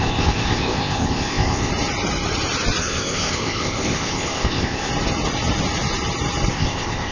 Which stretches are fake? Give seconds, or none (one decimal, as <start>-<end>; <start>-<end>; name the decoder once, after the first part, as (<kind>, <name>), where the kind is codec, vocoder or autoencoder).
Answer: 0.0-1.7 (codec, ZipCodec); 2.8-4.9; 6.5-7.1